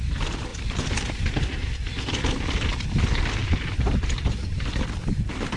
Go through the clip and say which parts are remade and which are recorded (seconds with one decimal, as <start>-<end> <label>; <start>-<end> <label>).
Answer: 0.0-0.5 recorded; 0.5-2.4 remade; 2.4-3.4 recorded; 3.4-5.6 remade